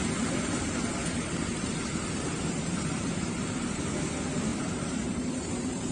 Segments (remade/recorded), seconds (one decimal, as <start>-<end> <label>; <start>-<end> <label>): 0.0-1.0 recorded; 1.0-3.9 remade; 3.9-4.5 recorded; 4.5-5.9 remade